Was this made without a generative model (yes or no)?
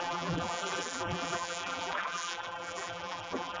no